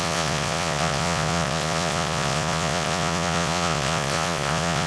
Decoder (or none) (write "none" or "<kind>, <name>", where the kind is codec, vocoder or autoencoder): vocoder, Vocos